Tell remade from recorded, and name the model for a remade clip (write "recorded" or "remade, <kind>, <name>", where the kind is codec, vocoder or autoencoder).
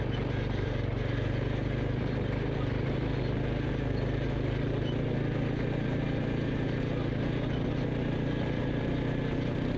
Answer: recorded